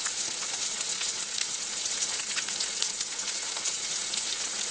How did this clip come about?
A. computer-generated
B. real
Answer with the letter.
A